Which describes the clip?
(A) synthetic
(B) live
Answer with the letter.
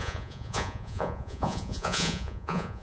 A